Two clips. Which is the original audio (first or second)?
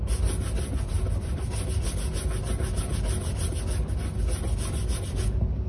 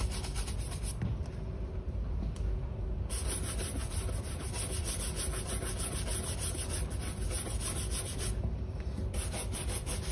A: first